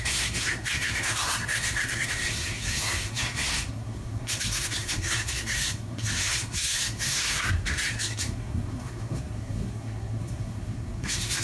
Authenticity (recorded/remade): remade